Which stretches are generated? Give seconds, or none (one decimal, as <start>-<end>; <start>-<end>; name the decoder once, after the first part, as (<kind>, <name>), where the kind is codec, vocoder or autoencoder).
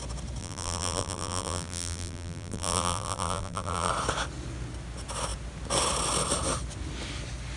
0.4-3.9 (vocoder, BigVGAN v2)